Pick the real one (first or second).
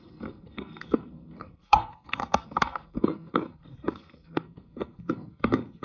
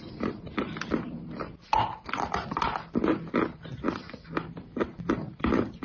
second